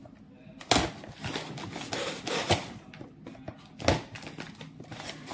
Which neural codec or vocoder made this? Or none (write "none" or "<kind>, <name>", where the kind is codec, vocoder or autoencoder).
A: none